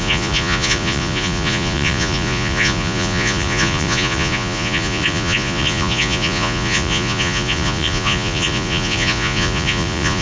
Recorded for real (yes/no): no